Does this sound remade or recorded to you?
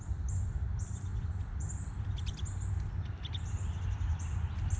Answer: recorded